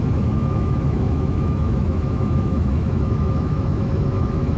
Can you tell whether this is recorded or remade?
remade